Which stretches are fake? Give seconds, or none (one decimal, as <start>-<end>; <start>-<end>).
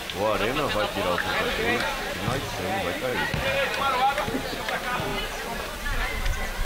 1.3-2.0; 3.1-3.8; 5.1-6.1